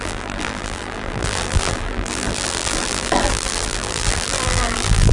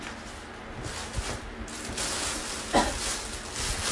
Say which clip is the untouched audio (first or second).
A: second